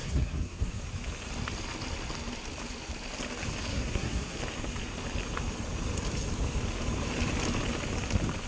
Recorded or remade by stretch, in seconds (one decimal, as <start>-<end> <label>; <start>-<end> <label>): 0.0-0.8 remade; 0.8-3.7 recorded; 3.7-4.4 remade; 4.4-8.5 recorded